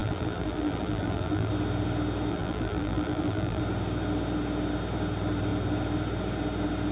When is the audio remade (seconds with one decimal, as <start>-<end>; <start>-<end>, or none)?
0.0-1.5; 2.3-3.6